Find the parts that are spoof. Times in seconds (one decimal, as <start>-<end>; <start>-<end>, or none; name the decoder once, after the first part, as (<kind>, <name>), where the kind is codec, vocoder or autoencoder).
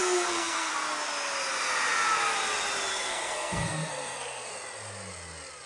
0.0-0.7 (codec, SNAC); 2.9-4.5